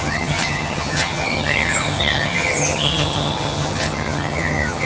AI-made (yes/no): yes